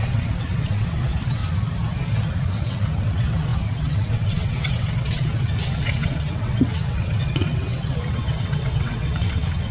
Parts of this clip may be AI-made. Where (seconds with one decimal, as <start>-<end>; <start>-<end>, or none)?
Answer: 0.0-1.4; 2.5-9.7